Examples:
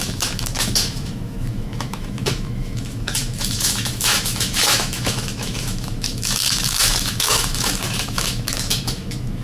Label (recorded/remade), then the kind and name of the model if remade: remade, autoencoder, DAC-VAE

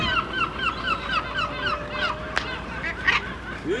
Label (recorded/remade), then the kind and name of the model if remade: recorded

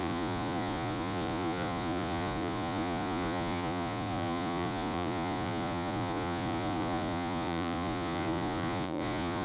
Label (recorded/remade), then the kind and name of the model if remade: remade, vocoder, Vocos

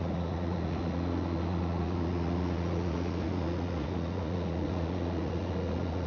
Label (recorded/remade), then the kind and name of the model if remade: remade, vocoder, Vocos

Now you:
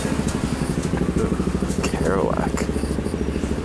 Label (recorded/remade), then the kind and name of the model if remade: recorded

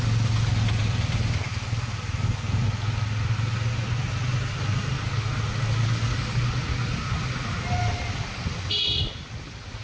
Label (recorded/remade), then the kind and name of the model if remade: recorded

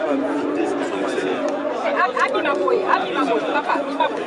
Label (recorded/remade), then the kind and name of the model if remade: remade, vocoder, Vocos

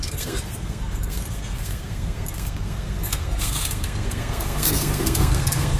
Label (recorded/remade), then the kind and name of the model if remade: remade, codec, SNAC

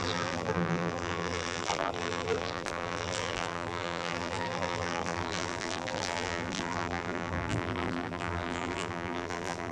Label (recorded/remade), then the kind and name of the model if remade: remade, vocoder, BigVGAN v2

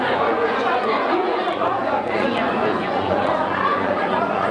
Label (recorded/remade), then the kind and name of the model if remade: remade, vocoder, Vocos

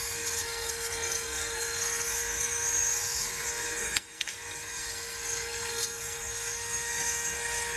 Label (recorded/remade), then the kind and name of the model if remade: remade, codec, SNAC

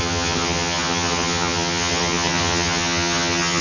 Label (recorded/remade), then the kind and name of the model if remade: remade, vocoder, HiFi-GAN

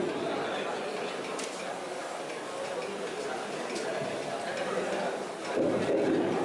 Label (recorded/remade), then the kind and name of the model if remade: recorded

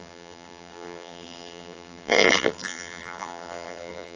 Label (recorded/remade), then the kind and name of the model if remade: remade, vocoder, BigVGAN v2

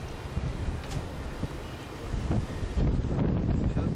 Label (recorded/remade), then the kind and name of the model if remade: recorded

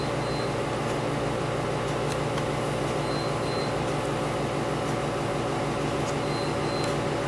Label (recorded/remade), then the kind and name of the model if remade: recorded